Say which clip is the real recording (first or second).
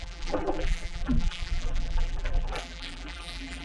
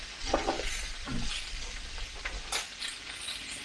second